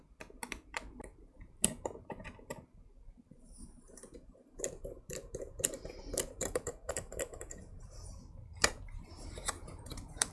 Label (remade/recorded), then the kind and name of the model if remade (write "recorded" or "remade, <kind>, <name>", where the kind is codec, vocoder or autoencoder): remade, vocoder, BigVGAN v2